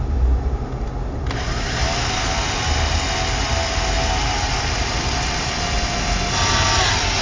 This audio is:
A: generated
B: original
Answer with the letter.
B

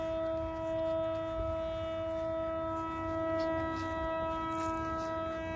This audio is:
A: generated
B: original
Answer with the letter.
B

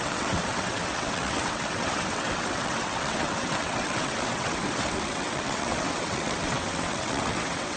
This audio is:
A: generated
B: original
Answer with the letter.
A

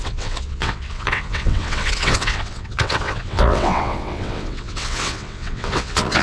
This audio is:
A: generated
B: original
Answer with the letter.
A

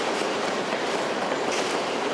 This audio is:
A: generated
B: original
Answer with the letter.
A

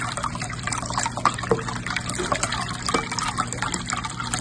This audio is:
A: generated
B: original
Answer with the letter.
B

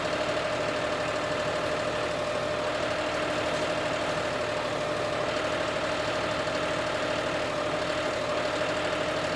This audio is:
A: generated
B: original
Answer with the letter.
B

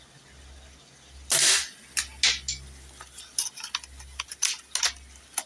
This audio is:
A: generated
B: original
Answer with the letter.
B